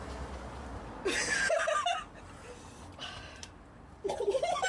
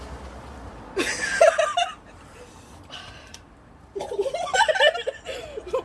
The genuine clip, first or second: first